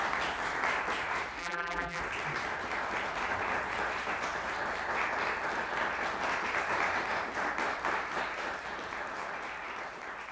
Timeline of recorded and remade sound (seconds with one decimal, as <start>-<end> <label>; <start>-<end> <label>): 0.0-1.4 recorded; 1.4-2.0 remade; 2.0-10.3 recorded